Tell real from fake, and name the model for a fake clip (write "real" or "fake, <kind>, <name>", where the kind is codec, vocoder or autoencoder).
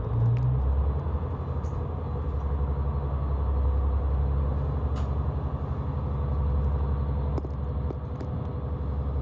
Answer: real